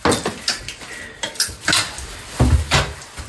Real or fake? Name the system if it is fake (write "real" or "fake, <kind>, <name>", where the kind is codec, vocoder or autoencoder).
real